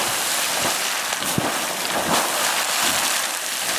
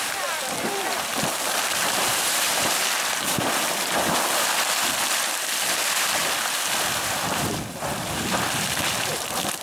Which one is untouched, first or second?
first